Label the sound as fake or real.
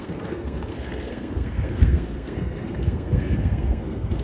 fake